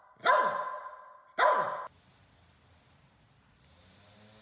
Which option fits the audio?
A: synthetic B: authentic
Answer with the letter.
B